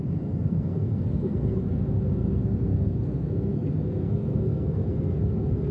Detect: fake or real fake